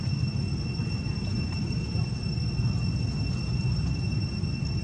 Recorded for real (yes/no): yes